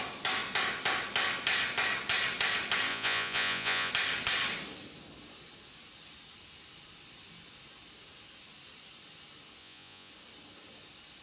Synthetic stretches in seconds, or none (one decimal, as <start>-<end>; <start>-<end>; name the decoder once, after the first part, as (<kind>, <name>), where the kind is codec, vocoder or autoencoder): 2.9-3.9 (vocoder, Vocos); 9.6-10.1